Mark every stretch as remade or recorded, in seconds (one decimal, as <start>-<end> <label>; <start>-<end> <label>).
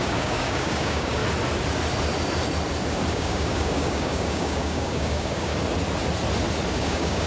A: 0.0-1.2 remade; 1.2-3.1 recorded; 3.1-5.5 remade; 5.5-6.7 recorded; 6.7-7.3 remade